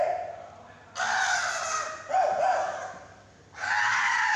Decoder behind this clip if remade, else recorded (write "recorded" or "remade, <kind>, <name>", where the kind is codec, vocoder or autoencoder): recorded